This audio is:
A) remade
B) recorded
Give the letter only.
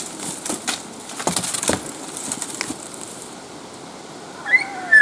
B